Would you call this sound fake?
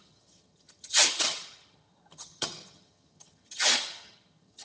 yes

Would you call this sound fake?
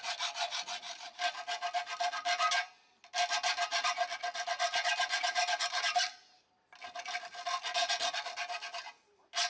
no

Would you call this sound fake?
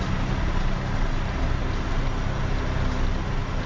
no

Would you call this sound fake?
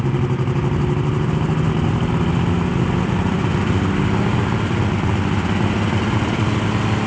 no